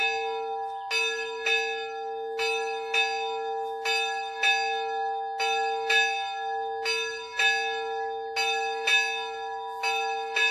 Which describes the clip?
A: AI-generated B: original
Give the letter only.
B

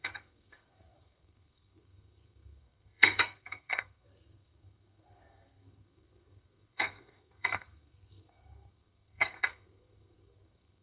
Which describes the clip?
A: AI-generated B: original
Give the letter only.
A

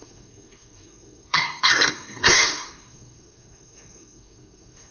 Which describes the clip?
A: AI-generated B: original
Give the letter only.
A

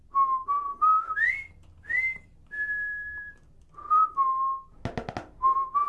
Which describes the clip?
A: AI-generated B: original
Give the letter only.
B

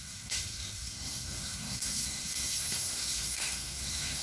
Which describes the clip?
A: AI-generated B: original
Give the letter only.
A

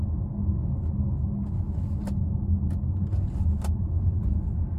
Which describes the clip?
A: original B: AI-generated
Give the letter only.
A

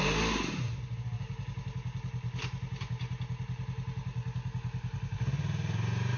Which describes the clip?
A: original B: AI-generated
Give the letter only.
A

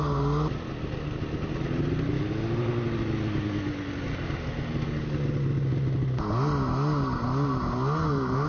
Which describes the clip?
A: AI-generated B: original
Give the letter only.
B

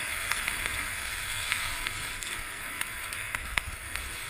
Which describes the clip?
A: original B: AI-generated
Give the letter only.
B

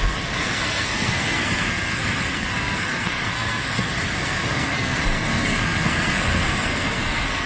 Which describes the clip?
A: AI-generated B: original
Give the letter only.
A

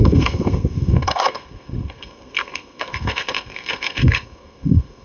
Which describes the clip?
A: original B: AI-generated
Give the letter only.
B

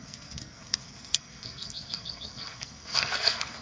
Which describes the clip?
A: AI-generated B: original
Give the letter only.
A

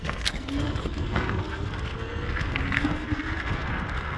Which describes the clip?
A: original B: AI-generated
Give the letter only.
B